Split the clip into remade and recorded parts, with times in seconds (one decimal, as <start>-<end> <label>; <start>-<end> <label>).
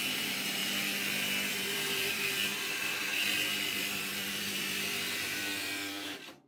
0.0-0.6 remade; 0.6-1.5 recorded; 1.5-6.5 remade